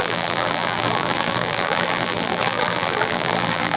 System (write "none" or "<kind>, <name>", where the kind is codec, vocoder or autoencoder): vocoder, BigVGAN v2